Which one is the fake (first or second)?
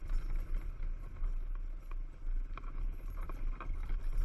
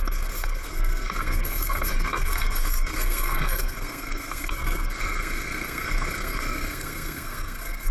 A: second